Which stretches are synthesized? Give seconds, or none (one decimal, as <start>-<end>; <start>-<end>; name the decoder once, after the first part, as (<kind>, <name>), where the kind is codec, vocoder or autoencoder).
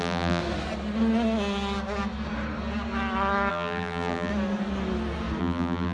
0.0-0.4 (vocoder, BigVGAN v2); 3.5-4.3; 5.4-5.9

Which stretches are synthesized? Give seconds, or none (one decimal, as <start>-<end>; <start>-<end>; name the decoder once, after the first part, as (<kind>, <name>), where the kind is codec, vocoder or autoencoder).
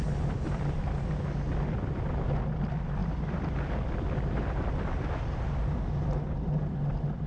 none